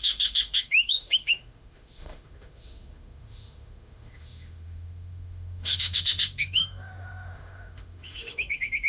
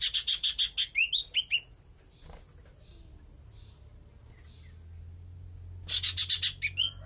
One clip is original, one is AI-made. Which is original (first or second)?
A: second